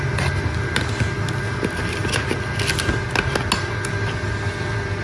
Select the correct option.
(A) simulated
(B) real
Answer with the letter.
B